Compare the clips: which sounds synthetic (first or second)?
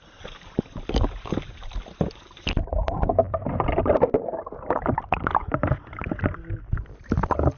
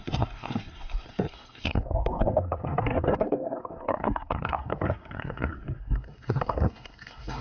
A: second